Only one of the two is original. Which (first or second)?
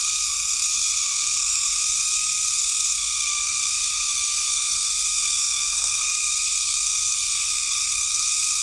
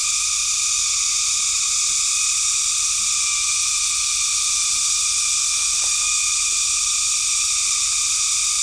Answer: second